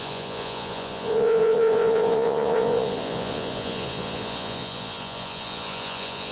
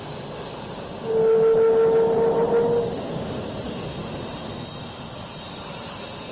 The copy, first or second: first